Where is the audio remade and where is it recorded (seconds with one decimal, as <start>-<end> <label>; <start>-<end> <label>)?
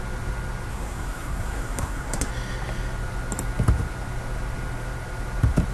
0.0-0.7 recorded; 0.7-2.3 remade; 2.3-5.7 recorded